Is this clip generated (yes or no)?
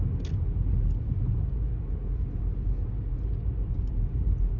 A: no